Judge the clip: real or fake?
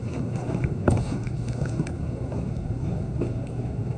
fake